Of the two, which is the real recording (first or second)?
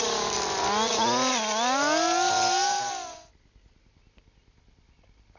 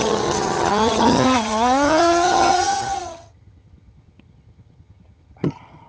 first